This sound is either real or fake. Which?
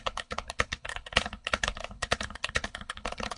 fake